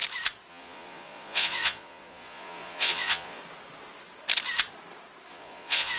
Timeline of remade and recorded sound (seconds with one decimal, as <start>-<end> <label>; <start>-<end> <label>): 0.0-0.5 recorded; 0.5-3.4 remade; 3.4-5.3 recorded; 5.3-6.0 remade